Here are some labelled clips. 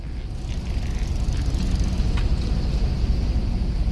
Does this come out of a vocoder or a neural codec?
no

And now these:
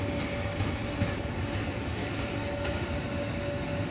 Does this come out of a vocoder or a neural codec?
no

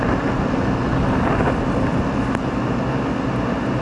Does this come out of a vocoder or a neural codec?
no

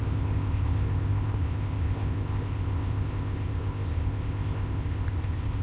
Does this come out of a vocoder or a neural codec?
yes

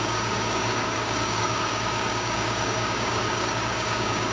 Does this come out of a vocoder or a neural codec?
yes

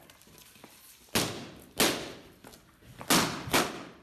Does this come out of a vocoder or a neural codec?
no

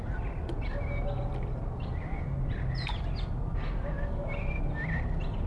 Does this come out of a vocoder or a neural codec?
no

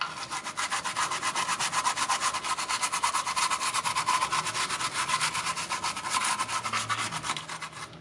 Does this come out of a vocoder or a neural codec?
no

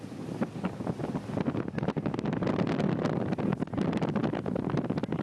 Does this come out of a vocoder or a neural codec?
no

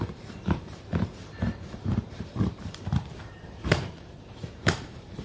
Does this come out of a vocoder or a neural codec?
yes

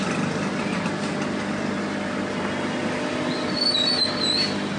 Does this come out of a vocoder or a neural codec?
no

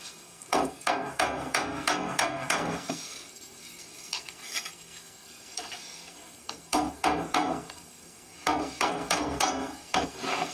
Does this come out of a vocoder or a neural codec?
yes